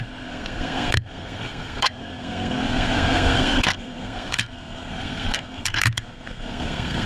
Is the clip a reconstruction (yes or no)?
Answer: yes